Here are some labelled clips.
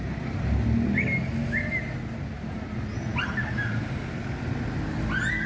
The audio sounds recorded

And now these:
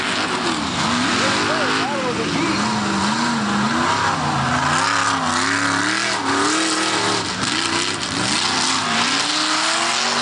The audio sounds recorded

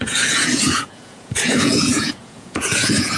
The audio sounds remade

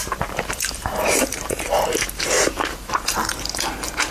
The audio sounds remade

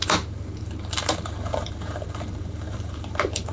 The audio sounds remade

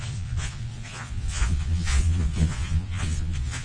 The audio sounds remade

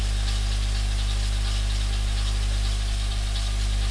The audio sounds recorded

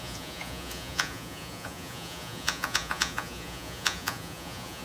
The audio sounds remade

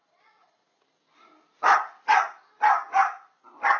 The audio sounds recorded